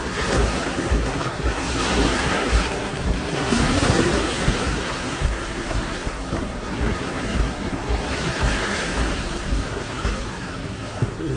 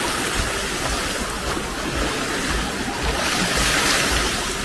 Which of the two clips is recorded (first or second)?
second